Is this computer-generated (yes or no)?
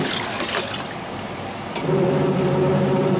yes